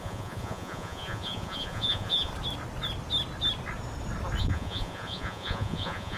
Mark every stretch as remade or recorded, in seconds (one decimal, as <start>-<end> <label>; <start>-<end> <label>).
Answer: 0.0-2.3 remade; 2.3-4.4 recorded; 4.4-6.2 remade